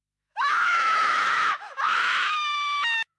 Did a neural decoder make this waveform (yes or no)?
yes